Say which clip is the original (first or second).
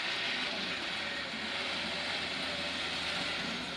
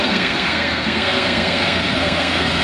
first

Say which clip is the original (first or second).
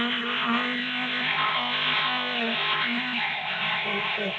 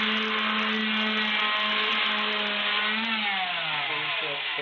second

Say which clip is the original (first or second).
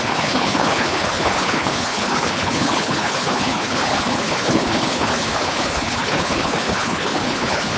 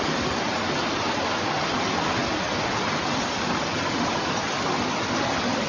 second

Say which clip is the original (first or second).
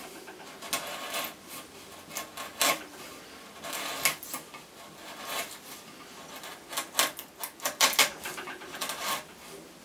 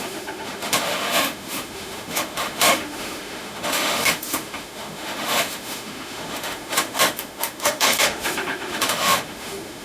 first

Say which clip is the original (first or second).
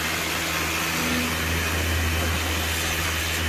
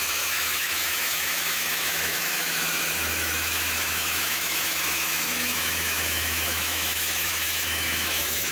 first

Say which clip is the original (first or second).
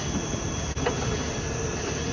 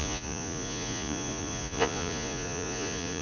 first